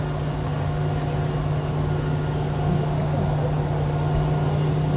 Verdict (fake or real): real